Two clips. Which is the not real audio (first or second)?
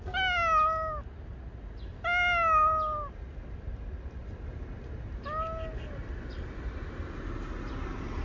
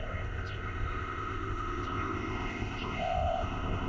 second